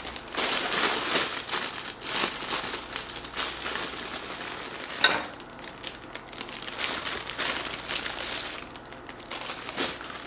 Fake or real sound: real